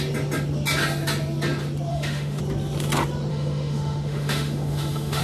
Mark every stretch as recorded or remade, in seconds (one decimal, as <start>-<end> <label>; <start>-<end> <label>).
0.0-1.9 recorded; 1.9-2.4 remade; 2.4-3.3 recorded; 3.3-5.2 remade